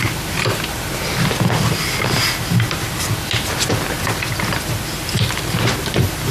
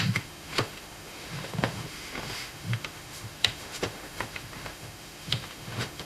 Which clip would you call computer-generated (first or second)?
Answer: second